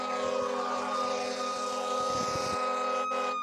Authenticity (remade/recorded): recorded